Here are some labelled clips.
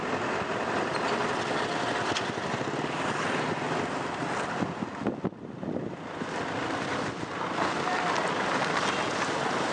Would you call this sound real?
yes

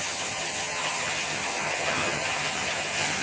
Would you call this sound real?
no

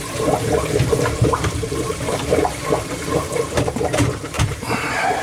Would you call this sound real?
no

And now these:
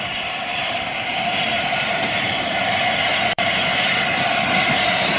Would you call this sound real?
no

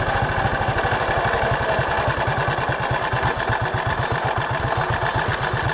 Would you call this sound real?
yes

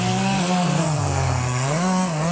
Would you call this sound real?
no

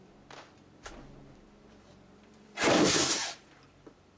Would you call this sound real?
no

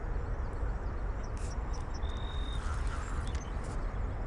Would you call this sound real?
yes